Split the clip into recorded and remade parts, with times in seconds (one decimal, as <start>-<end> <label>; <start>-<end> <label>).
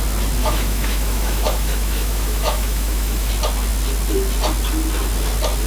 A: 0.0-0.4 recorded; 0.4-3.3 remade; 3.3-5.7 recorded